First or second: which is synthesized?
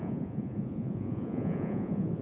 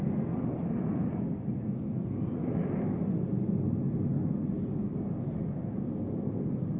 first